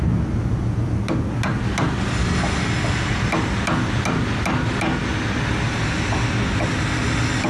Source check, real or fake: real